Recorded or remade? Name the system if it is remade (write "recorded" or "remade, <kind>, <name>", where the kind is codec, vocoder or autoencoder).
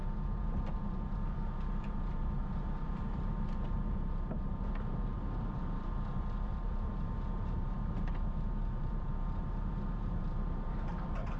remade, vocoder, BigVGAN v2